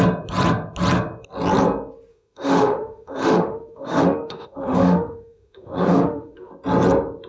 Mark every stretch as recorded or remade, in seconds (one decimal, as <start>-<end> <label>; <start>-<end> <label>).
0.0-2.1 recorded; 2.1-6.5 remade; 6.5-7.3 recorded

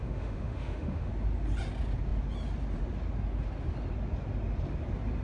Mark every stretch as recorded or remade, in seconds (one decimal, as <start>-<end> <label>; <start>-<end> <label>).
0.0-1.1 remade; 1.1-5.2 recorded

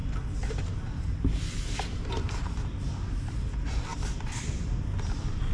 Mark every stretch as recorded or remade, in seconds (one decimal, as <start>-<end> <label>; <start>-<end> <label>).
0.0-5.5 recorded

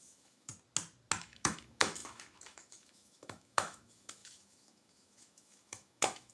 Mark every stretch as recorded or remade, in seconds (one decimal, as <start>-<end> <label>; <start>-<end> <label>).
0.0-0.5 remade; 0.5-1.2 recorded; 1.2-6.3 remade

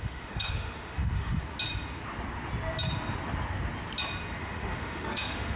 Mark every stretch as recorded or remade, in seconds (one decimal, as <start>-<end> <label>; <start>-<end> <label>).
0.0-1.4 remade; 1.4-4.4 recorded; 4.4-5.6 remade

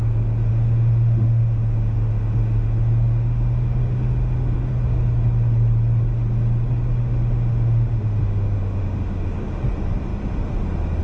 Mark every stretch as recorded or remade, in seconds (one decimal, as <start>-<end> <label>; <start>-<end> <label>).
0.0-0.5 recorded; 0.5-4.7 remade; 4.7-7.0 recorded; 7.0-9.6 remade; 9.6-11.0 recorded

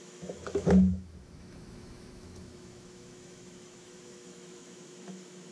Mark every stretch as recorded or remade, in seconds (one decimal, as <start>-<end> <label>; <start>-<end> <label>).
0.0-5.5 remade

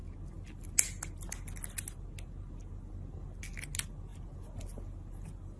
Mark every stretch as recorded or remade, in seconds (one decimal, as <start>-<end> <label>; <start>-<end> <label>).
0.0-5.6 recorded